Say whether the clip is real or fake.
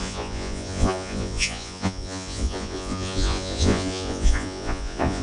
fake